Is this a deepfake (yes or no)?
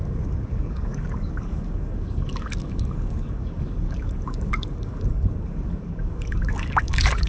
yes